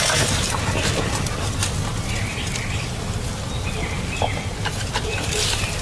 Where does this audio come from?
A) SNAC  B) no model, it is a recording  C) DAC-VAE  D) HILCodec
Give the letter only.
B